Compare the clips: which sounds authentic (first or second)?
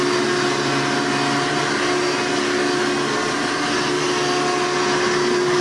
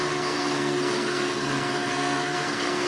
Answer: first